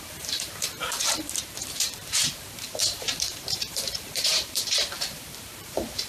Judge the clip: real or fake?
fake